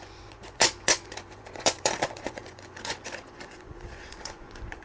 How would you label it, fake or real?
fake